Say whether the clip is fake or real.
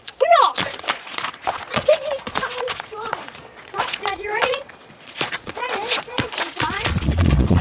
fake